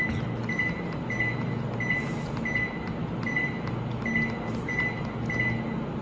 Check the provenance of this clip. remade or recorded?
recorded